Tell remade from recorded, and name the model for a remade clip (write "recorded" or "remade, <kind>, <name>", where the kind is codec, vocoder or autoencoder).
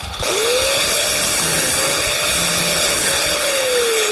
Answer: remade, codec, HILCodec